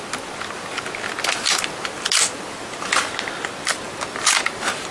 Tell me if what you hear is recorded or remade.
recorded